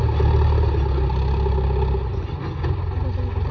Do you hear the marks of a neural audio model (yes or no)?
no